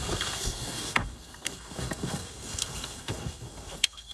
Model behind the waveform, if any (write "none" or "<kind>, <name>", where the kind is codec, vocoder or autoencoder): codec, SNAC